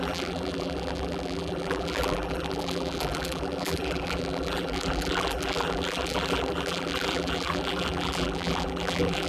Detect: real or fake fake